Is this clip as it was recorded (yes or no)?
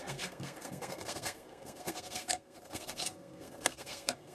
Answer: no